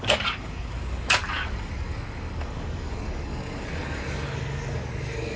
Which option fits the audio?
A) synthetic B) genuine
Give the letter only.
A